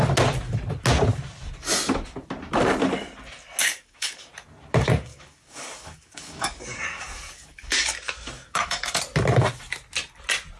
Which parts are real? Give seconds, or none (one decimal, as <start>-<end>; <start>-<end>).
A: 0.0-3.6; 4.3-5.1; 9.0-10.6